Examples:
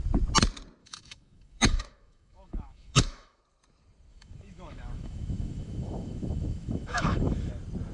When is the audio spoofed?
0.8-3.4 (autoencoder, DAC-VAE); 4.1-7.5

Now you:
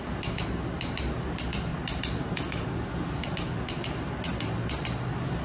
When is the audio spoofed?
none